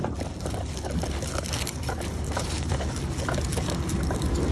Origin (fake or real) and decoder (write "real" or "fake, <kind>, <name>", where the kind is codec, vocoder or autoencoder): real